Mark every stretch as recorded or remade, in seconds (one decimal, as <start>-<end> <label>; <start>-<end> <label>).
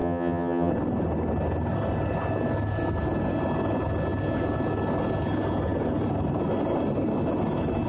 0.0-0.7 remade; 0.7-7.9 recorded